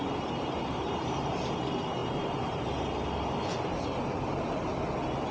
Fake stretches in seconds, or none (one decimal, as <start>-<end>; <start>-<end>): none